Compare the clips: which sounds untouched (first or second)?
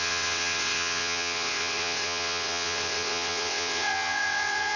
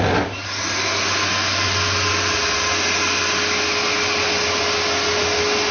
second